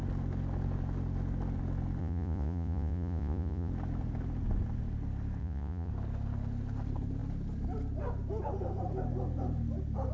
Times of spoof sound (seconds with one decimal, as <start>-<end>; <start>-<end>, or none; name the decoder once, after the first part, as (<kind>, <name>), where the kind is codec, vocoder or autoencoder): 2.0-3.7 (vocoder, Vocos); 5.4-5.9